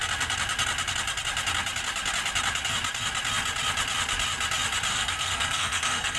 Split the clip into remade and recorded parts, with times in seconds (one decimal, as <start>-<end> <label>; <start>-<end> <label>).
0.0-4.9 recorded; 4.9-6.2 remade